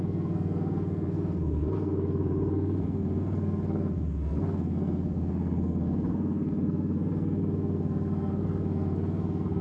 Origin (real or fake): fake